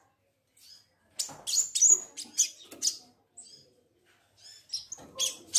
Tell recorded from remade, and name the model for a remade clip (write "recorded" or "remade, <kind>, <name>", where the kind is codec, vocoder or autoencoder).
recorded